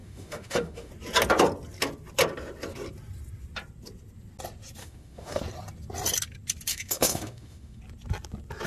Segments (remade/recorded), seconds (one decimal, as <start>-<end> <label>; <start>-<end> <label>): 0.0-0.9 remade; 0.9-4.8 recorded; 4.8-5.4 remade; 5.4-6.7 recorded; 6.7-7.8 remade; 7.8-8.7 recorded